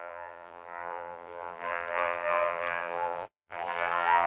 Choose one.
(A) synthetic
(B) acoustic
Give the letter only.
A